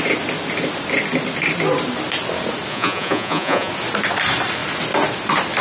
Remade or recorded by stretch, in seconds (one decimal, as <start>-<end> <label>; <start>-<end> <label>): 0.0-2.7 recorded; 2.7-3.7 remade; 3.7-5.6 recorded